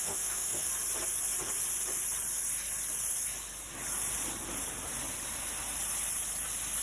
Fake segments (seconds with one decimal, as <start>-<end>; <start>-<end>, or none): 0.0-0.7